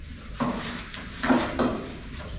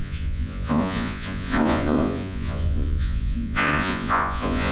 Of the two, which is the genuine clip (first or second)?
first